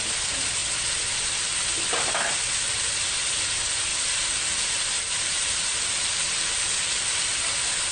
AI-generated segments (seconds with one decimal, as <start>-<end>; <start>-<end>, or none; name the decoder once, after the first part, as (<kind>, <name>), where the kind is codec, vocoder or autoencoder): none